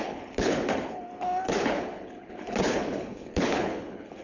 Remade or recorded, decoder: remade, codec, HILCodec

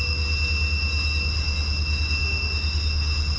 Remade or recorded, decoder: recorded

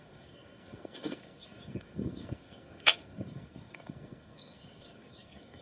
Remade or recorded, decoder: remade, codec, SNAC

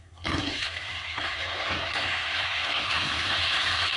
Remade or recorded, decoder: remade, codec, SNAC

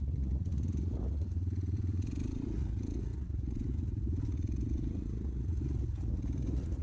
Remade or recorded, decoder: remade, vocoder, Vocos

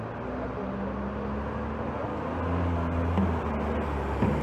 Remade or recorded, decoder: recorded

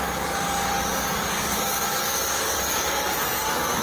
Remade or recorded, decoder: remade, codec, DAC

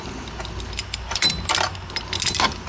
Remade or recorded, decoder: recorded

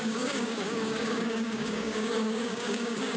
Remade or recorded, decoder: remade, codec, DAC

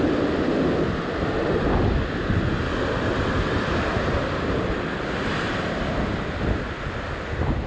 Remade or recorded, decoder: recorded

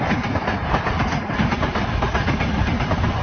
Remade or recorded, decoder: recorded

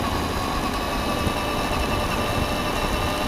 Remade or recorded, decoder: recorded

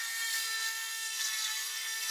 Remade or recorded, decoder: remade, codec, SNAC